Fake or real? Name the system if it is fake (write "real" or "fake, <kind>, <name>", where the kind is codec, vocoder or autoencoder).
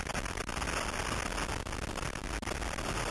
real